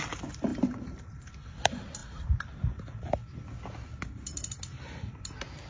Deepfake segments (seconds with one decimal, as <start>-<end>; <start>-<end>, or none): 0.5-1.3